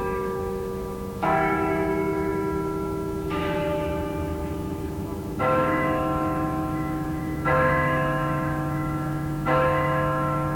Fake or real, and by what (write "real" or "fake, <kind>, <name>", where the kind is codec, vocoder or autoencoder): fake, autoencoder, DAC-VAE